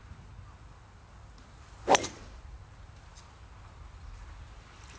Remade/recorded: recorded